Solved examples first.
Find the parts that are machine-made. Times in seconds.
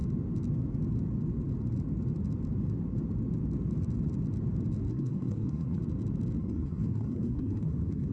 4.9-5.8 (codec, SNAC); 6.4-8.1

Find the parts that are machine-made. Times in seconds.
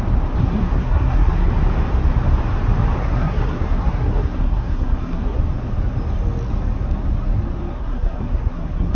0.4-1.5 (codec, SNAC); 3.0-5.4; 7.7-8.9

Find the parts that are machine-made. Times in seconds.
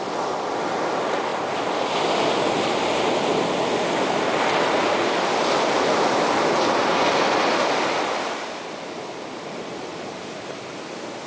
none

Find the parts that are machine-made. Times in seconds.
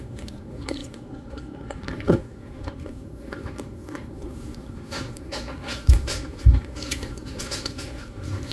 0.0-8.5 (codec, SNAC)